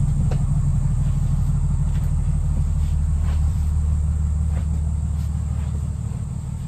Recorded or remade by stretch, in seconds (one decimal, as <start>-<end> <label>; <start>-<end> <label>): 0.0-0.7 recorded; 0.7-4.6 remade; 4.6-6.7 recorded